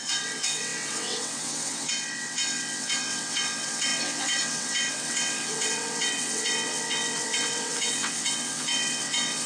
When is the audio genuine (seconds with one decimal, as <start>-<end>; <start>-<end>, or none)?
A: none